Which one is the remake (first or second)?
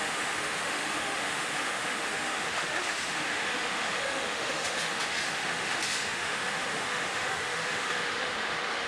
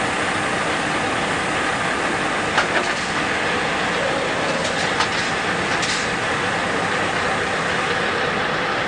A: first